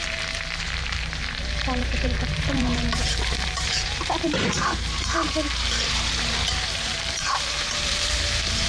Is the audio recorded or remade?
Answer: remade